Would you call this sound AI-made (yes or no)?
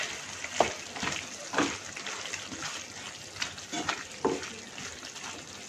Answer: no